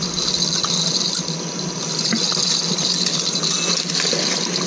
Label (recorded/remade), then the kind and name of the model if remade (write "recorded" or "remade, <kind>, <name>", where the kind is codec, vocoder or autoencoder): recorded